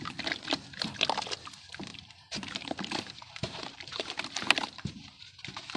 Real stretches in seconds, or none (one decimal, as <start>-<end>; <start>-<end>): 0.0-1.9